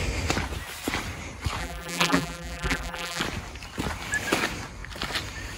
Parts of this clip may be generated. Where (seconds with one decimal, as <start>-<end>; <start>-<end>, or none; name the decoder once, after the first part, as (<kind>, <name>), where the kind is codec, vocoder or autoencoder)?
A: 1.6-3.2 (vocoder, BigVGAN v2)